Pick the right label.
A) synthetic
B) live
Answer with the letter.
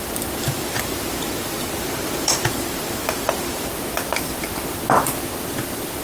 A